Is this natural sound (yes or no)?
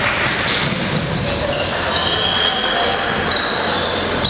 yes